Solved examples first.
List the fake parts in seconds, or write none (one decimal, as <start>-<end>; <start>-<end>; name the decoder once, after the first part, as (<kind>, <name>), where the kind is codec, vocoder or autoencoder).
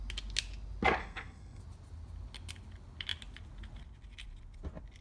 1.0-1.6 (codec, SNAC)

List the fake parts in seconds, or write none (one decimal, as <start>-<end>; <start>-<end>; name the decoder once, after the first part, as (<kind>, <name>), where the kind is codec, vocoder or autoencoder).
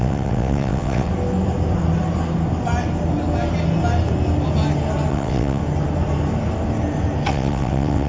0.0-1.1 (vocoder, WaveNeXt); 5.1-5.6; 7.3-8.1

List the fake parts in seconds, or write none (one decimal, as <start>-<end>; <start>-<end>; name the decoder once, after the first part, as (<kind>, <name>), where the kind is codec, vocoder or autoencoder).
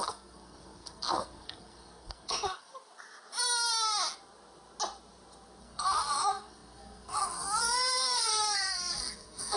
0.0-2.7 (codec, SNAC); 5.6-9.6